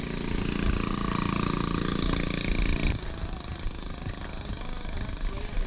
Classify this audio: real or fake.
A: real